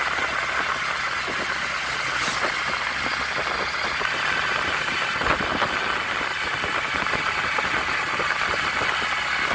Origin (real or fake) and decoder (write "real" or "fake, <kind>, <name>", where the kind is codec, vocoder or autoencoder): real